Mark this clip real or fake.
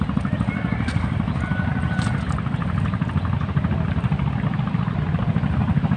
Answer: real